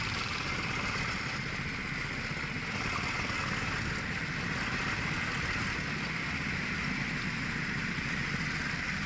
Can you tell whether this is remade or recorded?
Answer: recorded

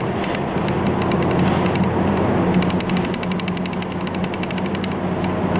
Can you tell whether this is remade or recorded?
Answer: recorded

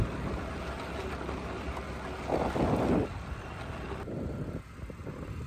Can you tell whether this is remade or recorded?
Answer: recorded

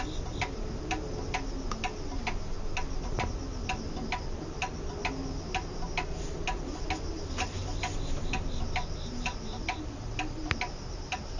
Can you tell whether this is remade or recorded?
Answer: recorded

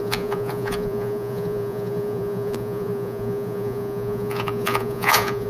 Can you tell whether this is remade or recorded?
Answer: remade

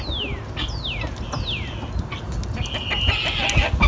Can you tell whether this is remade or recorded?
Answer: recorded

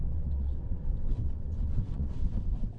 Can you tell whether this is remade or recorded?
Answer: remade